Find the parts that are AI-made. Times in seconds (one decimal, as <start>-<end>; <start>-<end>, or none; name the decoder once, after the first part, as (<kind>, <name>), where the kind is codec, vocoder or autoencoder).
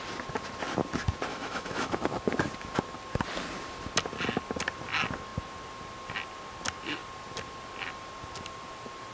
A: 1.3-1.9 (autoencoder, DAC-VAE)